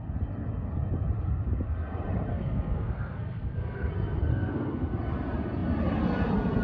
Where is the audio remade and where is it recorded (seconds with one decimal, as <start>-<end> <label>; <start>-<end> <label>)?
0.0-2.3 recorded; 2.3-3.9 remade; 3.9-4.3 recorded; 4.3-4.9 remade; 4.9-6.6 recorded